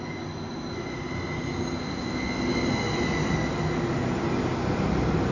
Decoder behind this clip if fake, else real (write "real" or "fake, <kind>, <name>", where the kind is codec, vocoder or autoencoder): real